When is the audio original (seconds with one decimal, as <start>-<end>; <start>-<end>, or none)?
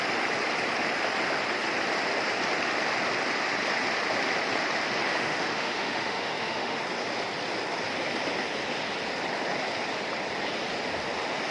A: 0.0-5.1; 6.8-11.5